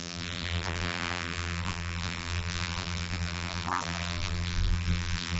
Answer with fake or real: fake